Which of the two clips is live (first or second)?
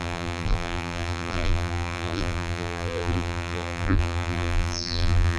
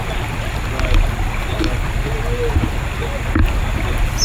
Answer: second